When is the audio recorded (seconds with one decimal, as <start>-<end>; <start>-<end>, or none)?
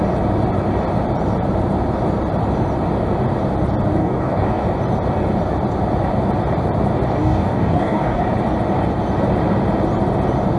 0.0-4.0; 4.6-7.2; 8.2-10.6